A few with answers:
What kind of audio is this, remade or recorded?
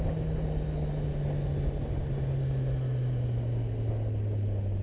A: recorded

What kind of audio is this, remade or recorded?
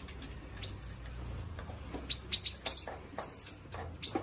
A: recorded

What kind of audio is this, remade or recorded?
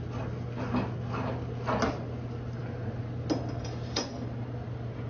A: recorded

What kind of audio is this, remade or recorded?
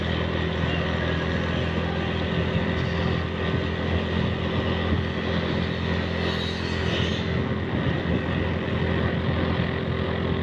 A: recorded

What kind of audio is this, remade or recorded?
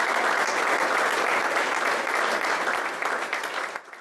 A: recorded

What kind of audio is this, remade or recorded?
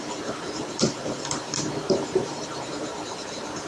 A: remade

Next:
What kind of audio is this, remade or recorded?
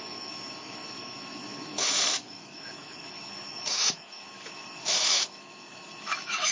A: remade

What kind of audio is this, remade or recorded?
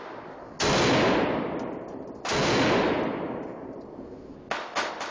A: recorded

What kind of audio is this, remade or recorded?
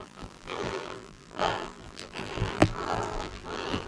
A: remade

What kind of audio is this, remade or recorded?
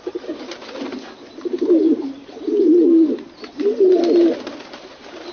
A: recorded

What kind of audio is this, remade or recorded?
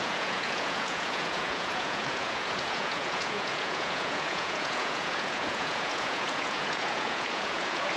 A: remade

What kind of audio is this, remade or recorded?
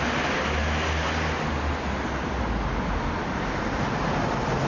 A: recorded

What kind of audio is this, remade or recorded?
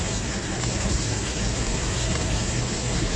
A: remade